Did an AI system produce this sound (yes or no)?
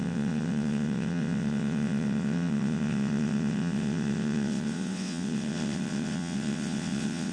yes